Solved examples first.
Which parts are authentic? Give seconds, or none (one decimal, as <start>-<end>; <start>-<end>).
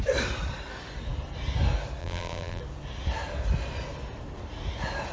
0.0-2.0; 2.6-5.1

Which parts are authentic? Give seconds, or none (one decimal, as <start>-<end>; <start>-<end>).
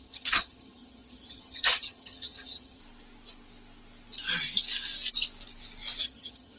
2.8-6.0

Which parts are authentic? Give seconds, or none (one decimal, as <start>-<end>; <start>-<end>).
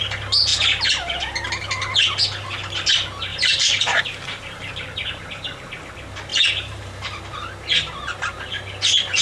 0.0-3.3; 4.7-6.3; 7.2-9.2